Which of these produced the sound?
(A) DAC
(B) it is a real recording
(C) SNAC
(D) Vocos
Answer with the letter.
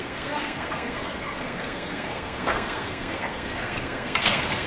C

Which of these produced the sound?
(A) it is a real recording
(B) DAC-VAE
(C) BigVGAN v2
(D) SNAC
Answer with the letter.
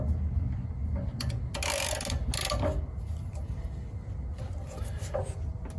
A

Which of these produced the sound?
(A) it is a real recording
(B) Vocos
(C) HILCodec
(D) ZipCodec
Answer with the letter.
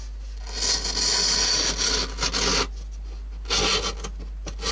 A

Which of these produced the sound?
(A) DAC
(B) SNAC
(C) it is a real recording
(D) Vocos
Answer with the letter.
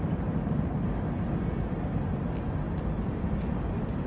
C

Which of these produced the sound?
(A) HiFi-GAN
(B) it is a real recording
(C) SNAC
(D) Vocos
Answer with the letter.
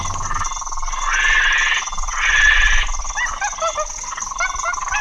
B